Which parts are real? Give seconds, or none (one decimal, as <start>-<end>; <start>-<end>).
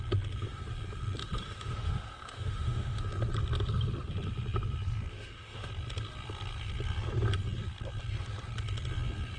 0.0-1.2; 3.0-5.1; 5.7-9.4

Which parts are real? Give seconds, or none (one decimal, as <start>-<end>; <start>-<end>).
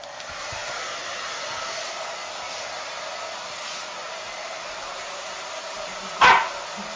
0.0-4.0; 5.9-7.0